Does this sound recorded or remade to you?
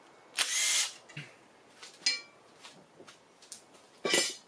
recorded